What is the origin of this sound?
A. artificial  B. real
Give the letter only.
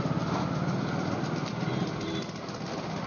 B